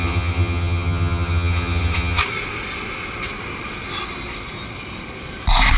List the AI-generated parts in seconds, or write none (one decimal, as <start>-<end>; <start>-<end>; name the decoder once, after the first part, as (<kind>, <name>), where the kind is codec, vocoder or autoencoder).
0.0-2.2 (vocoder, HiFi-GAN)